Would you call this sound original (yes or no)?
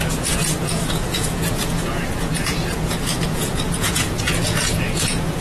no